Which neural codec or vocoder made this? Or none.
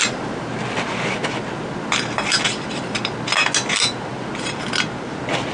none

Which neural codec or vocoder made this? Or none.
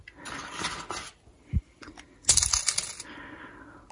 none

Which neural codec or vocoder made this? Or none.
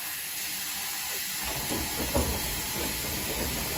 none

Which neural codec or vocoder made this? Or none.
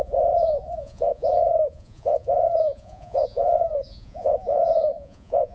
vocoder, Vocos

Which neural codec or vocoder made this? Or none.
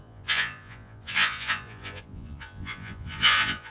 vocoder, Vocos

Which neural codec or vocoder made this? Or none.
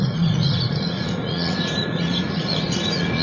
vocoder, Vocos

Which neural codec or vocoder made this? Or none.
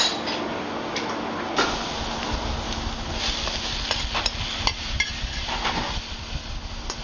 none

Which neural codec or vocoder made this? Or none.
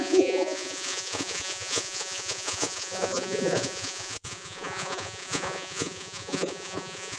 vocoder, Vocos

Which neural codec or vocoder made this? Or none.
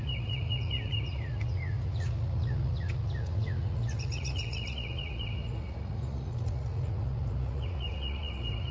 vocoder, Vocos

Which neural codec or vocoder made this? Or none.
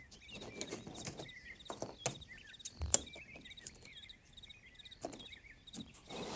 none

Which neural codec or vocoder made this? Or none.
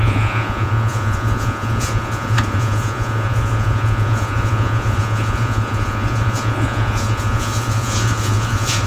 vocoder, Vocos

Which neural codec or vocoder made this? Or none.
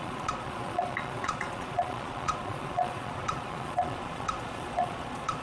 vocoder, Vocos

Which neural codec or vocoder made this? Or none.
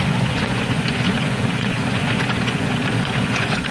vocoder, Vocos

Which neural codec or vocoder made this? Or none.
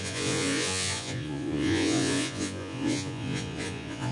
vocoder, Vocos